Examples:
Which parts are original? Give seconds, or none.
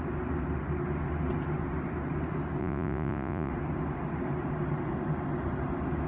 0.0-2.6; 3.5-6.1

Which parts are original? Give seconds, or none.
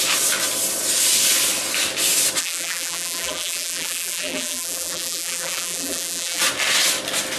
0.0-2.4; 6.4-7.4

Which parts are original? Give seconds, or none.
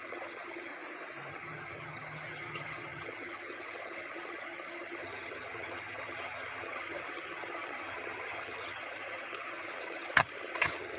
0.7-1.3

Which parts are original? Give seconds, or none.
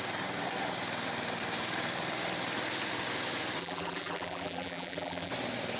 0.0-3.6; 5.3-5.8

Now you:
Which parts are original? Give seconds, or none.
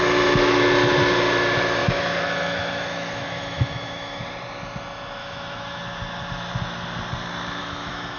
0.0-1.8; 4.2-5.2; 5.8-7.6